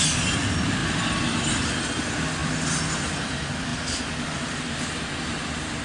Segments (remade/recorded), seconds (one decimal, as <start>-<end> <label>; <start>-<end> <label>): 0.0-5.8 recorded